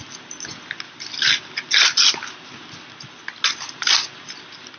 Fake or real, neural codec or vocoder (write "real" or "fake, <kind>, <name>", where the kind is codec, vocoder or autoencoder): real